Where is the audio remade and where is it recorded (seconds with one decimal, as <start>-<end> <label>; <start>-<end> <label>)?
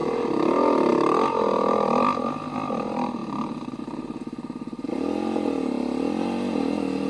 0.0-7.1 recorded